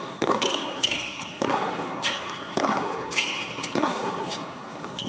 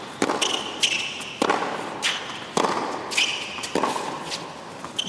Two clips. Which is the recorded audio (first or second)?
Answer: second